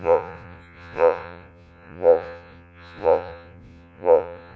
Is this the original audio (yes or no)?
no